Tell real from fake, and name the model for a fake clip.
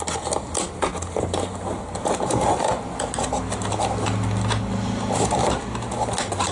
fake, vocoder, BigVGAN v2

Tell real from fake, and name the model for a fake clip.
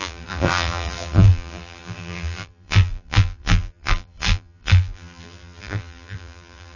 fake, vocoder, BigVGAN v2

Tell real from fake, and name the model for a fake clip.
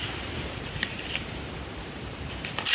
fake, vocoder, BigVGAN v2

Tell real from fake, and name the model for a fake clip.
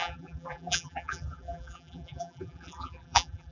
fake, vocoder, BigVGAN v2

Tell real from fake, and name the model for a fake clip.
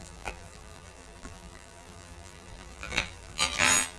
fake, vocoder, BigVGAN v2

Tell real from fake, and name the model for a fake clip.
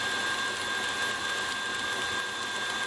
real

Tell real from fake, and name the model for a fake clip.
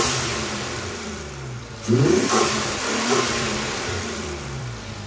fake, vocoder, BigVGAN v2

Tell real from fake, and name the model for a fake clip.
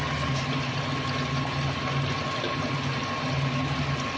real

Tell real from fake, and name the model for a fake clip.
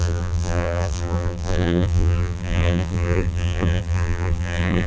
fake, vocoder, BigVGAN v2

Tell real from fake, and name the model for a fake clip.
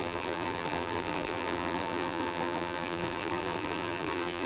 fake, vocoder, BigVGAN v2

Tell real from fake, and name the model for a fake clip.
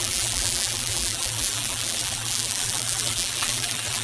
fake, vocoder, BigVGAN v2